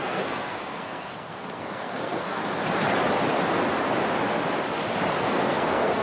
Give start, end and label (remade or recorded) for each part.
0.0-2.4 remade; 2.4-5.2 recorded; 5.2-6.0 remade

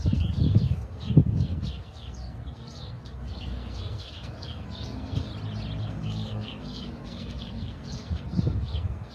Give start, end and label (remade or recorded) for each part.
0.0-5.3 remade; 5.3-5.8 recorded; 5.8-9.1 remade

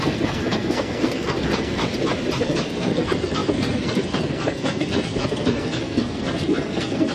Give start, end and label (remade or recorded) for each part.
0.0-1.8 remade; 1.8-2.4 recorded; 2.4-7.1 remade